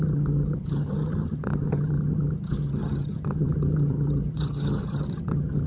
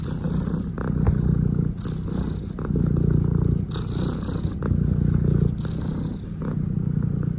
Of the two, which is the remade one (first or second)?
first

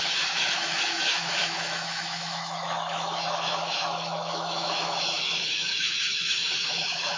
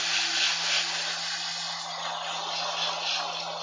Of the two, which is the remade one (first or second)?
first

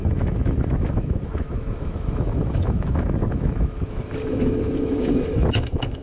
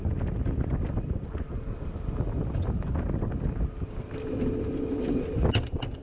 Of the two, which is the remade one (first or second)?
first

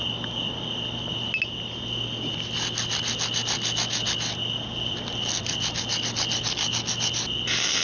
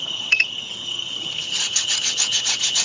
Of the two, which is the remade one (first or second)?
second